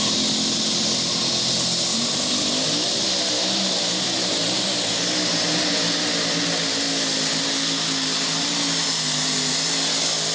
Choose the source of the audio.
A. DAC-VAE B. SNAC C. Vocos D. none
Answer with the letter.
D